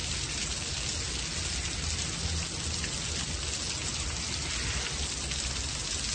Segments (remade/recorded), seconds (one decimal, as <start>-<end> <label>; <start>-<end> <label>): 0.0-6.1 recorded